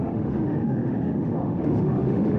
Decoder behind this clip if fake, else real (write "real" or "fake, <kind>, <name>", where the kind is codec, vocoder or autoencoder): fake, autoencoder, DAC-VAE